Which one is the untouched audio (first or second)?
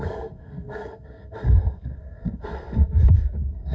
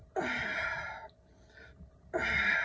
second